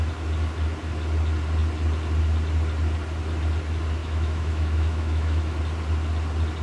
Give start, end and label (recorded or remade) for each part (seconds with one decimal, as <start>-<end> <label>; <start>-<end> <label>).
0.0-4.0 recorded; 4.0-5.6 remade; 5.6-6.6 recorded